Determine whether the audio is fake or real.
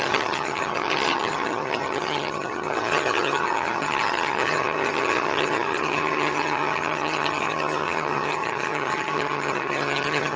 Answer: fake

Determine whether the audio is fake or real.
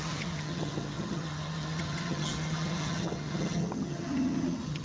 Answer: fake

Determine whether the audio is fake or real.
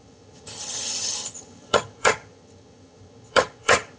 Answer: fake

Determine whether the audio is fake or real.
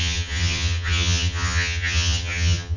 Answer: fake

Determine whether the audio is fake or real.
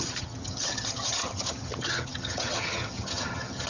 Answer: fake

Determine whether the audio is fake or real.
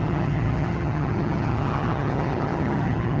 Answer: fake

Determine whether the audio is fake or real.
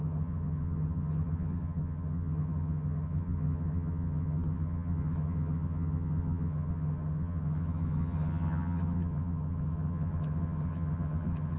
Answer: fake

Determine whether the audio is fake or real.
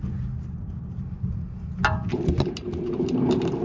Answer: real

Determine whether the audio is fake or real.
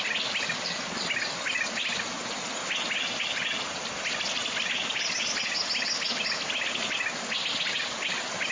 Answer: real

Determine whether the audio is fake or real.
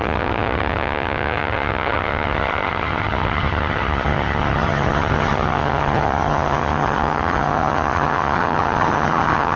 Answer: fake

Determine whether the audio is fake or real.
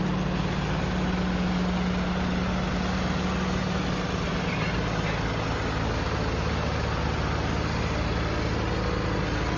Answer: real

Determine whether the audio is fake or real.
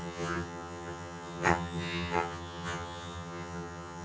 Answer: fake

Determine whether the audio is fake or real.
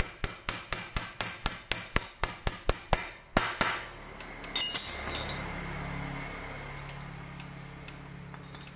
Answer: real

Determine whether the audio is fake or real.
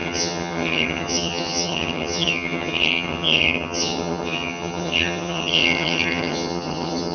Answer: fake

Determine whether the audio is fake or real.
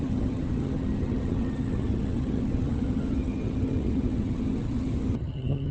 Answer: fake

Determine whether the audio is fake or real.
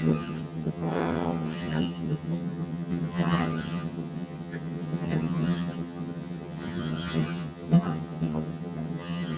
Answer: fake